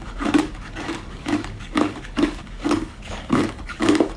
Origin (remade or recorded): remade